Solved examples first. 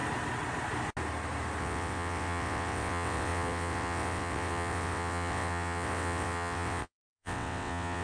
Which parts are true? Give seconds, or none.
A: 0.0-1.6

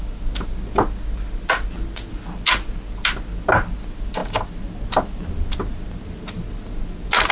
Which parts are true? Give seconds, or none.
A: 0.0-7.3

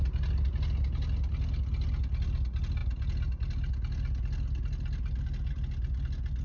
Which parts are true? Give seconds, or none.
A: 0.0-6.4

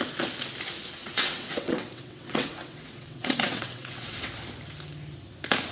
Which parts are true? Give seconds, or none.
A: 0.0-1.0; 4.4-5.7

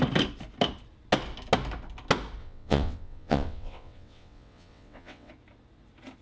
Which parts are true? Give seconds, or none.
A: 0.0-2.4; 5.3-6.2

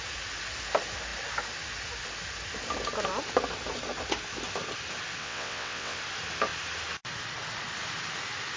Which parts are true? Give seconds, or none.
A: 0.0-5.2; 6.0-8.6

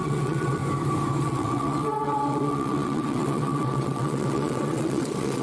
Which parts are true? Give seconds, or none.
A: 0.6-1.2

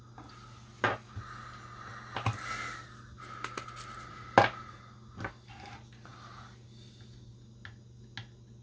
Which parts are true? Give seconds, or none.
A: 0.0-8.6